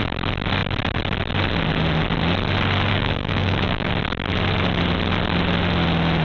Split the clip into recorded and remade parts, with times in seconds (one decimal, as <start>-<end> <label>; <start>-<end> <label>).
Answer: 0.0-2.9 recorded; 2.9-3.9 remade; 3.9-6.2 recorded